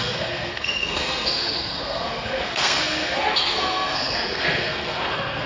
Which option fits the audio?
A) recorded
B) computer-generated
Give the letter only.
B